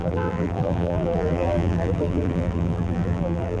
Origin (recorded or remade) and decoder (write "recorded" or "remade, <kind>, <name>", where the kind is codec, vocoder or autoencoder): remade, vocoder, BigVGAN v2